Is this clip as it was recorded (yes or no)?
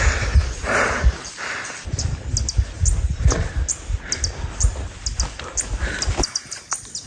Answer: yes